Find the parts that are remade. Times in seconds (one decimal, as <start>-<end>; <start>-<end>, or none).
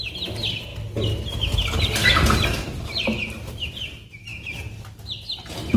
none